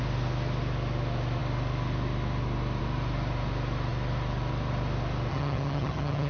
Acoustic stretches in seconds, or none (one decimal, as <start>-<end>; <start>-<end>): 0.0-5.3